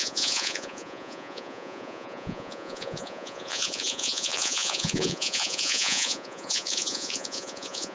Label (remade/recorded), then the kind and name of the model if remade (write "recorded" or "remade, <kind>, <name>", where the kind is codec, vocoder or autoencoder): remade, vocoder, Vocos